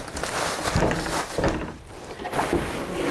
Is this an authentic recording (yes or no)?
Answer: yes